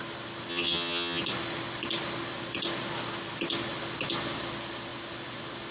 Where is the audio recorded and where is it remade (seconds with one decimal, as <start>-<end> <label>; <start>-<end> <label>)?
0.0-0.5 recorded; 0.5-1.2 remade; 1.2-5.7 recorded